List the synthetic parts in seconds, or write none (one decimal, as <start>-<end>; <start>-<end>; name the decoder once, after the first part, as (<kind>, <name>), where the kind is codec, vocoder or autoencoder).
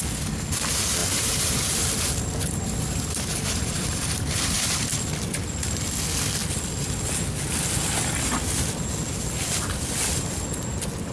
1.0-4.8 (vocoder, BigVGAN v2)